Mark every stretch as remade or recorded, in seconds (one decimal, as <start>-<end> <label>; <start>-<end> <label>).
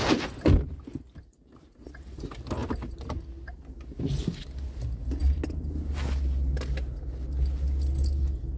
0.0-8.6 recorded